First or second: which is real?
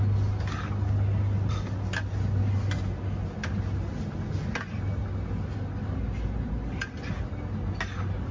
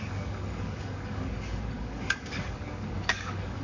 first